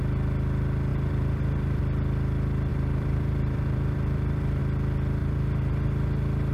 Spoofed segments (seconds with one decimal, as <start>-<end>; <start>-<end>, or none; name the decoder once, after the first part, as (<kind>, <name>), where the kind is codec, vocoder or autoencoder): 0.9-1.8 (vocoder, BigVGAN v2); 2.7-4.6; 5.2-5.7